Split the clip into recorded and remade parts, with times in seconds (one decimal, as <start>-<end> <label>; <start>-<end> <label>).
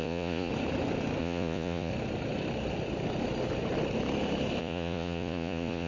0.0-0.5 remade; 0.5-1.2 recorded; 1.2-1.9 remade; 1.9-4.6 recorded; 4.6-5.9 remade